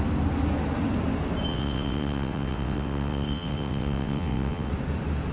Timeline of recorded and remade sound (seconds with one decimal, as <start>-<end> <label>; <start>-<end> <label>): 0.0-1.5 recorded; 1.5-4.7 remade; 4.7-5.3 recorded